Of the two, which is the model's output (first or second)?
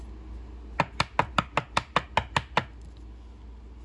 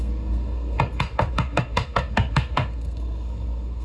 second